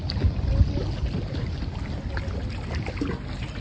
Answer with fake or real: real